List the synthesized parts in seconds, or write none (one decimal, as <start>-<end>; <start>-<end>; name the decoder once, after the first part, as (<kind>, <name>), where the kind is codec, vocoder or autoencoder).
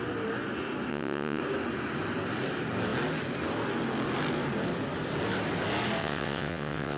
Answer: 0.9-1.4 (vocoder, WaveNeXt); 6.0-7.0